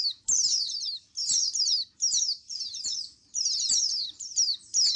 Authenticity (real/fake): fake